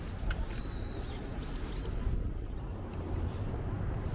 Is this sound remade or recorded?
recorded